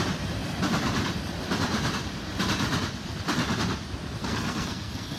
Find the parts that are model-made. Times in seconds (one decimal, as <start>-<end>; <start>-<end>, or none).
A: 4.2-5.2

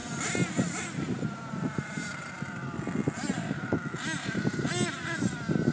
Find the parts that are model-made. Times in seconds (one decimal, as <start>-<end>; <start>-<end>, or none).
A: none

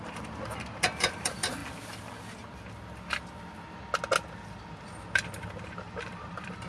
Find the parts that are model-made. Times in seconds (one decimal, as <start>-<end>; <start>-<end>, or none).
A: 0.0-1.6; 5.6-6.7

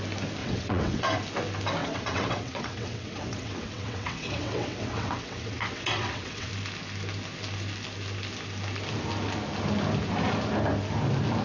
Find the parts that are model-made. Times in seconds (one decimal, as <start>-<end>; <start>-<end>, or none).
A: 0.4-1.1; 1.8-6.5

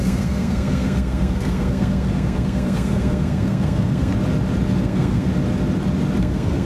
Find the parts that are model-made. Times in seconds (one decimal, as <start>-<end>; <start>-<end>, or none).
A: 0.0-4.1; 4.8-5.3; 6.2-6.7

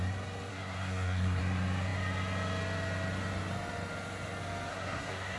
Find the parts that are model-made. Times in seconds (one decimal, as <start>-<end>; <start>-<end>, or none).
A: 0.5-1.4; 4.7-5.4